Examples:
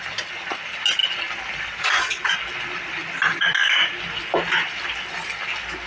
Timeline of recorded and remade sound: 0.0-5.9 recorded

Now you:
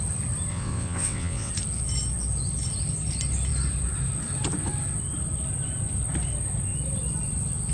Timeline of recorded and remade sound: 0.0-0.5 recorded; 0.5-1.5 remade; 1.5-7.7 recorded

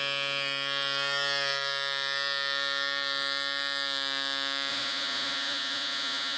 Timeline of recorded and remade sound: 0.0-4.7 recorded; 4.7-6.4 remade

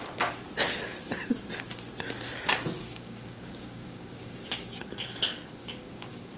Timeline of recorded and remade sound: 0.0-2.8 recorded; 2.8-4.8 remade; 4.8-5.6 recorded; 5.6-6.4 remade

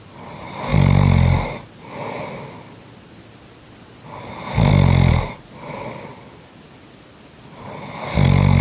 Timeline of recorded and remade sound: 0.0-8.6 recorded

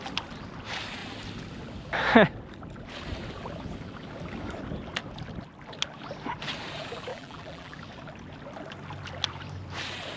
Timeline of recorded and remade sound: 0.0-7.1 recorded; 7.1-7.8 remade; 7.8-10.2 recorded

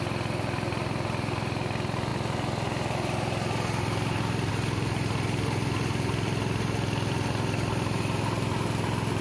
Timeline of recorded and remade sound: 0.0-9.2 recorded